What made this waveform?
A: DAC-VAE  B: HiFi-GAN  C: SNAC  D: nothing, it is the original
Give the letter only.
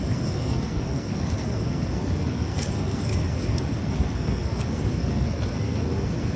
C